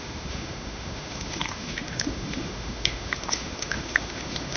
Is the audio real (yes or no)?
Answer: no